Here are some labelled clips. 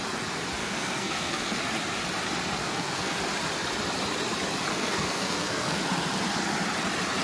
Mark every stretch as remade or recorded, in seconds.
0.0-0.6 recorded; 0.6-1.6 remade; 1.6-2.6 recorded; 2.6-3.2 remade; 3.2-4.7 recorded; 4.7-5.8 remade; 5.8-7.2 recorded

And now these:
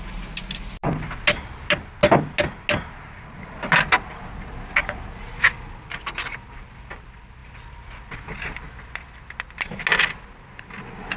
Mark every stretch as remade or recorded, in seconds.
0.0-11.2 recorded

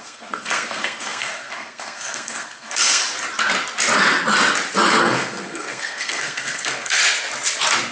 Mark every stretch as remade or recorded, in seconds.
0.0-3.0 remade; 3.0-5.0 recorded; 5.0-7.0 remade; 7.0-7.9 recorded

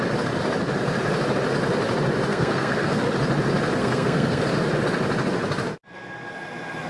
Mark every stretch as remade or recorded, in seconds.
0.0-2.3 recorded; 2.3-3.0 remade; 3.0-3.8 recorded; 3.8-4.4 remade; 4.4-6.9 recorded

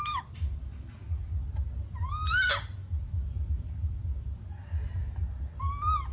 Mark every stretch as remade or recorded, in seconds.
0.0-6.1 recorded

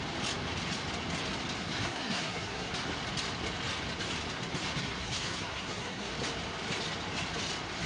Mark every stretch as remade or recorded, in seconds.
0.0-1.6 recorded; 1.6-2.7 remade; 2.7-4.8 recorded; 4.8-6.1 remade; 6.1-7.9 recorded

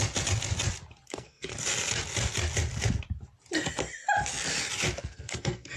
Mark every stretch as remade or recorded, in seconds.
0.0-1.1 recorded; 1.1-1.5 remade; 1.5-5.0 recorded; 5.0-5.8 remade

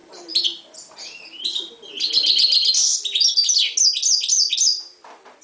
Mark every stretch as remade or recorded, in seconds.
0.0-5.4 recorded